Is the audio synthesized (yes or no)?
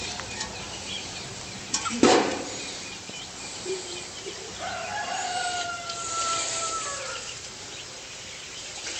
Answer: yes